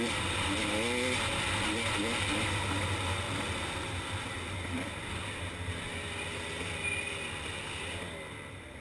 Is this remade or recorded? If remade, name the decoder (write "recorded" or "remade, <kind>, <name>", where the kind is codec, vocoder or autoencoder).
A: recorded